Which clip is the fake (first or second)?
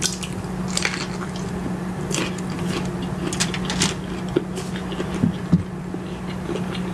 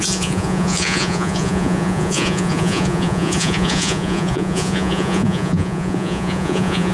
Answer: second